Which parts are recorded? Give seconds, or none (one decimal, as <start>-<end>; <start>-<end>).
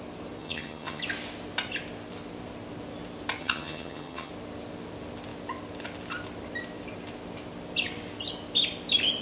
0.0-0.4; 1.0-3.4; 4.3-9.2